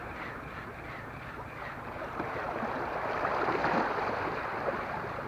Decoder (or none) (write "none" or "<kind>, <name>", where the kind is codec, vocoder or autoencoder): vocoder, BigVGAN v2